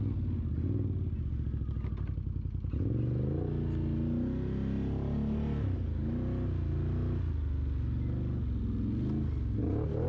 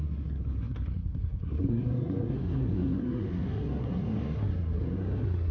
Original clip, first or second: first